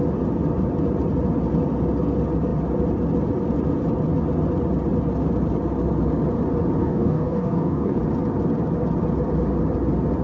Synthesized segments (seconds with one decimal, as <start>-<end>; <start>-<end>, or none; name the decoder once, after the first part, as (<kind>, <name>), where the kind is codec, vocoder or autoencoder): 6.8-8.0 (codec, DAC)